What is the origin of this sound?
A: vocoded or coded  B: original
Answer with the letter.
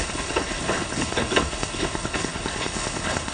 A